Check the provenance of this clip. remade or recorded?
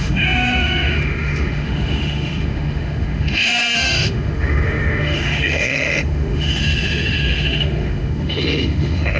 remade